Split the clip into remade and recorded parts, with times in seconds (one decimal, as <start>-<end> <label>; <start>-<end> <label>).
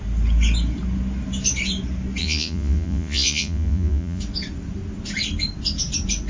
0.0-2.2 recorded; 2.2-4.2 remade; 4.2-6.3 recorded